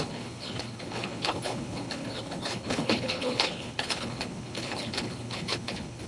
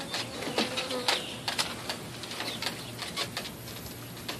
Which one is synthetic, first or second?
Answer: first